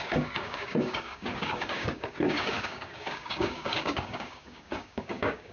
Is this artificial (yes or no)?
yes